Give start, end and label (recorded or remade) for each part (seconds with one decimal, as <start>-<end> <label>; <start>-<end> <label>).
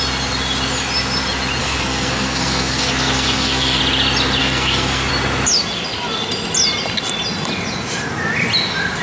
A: 0.0-1.6 recorded; 1.6-3.8 remade; 3.8-4.4 recorded; 4.4-5.1 remade; 5.1-9.0 recorded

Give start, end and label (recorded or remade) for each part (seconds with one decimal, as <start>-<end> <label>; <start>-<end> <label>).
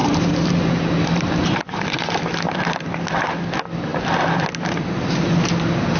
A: 0.0-2.0 remade; 2.0-6.0 recorded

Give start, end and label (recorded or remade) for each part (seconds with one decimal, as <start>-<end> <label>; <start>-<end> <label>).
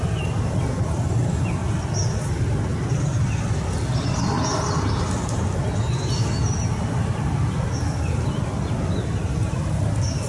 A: 0.0-10.3 recorded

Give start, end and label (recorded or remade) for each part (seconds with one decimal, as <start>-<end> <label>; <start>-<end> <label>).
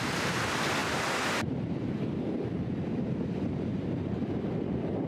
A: 0.0-5.1 remade